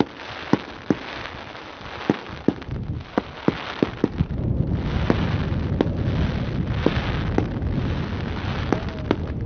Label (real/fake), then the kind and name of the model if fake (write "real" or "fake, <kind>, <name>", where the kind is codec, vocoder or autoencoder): real